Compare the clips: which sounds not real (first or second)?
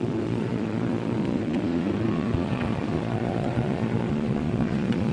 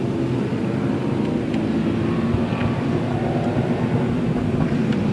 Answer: first